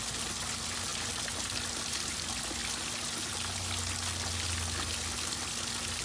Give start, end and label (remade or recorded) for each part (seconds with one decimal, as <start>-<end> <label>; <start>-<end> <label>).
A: 0.0-6.0 recorded